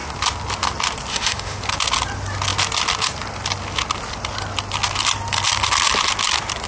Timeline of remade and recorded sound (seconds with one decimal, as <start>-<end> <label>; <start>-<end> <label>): 0.0-1.1 recorded; 1.1-1.6 remade; 1.6-6.7 recorded